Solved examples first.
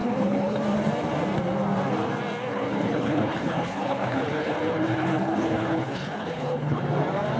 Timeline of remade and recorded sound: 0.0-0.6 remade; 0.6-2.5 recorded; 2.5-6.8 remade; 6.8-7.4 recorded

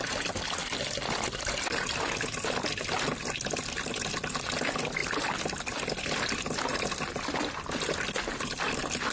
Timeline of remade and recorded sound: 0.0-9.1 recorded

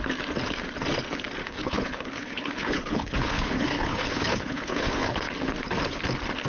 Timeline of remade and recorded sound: 0.0-1.4 recorded; 1.4-5.3 remade; 5.3-6.5 recorded

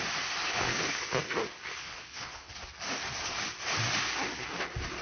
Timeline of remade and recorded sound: 0.0-0.4 recorded; 0.4-1.0 remade; 1.0-1.8 recorded; 1.8-2.5 remade; 2.5-5.0 recorded

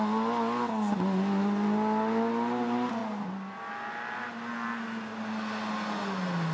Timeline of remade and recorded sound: 0.0-6.5 recorded